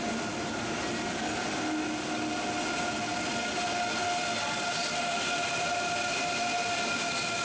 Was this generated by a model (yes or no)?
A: no